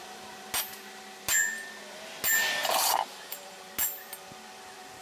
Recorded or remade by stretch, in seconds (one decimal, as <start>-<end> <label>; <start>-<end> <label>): 0.0-2.6 recorded; 2.6-3.6 remade; 3.6-5.0 recorded